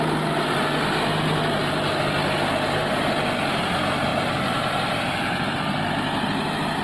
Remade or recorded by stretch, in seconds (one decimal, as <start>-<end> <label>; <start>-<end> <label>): 0.0-4.1 recorded; 4.1-5.8 remade; 5.8-6.8 recorded